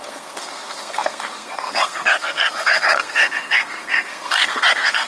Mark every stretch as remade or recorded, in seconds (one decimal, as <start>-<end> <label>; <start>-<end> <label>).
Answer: 0.0-5.1 remade